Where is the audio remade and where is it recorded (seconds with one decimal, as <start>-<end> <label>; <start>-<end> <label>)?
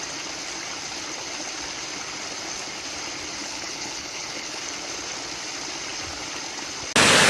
0.0-3.4 recorded; 3.4-4.6 remade; 4.6-7.3 recorded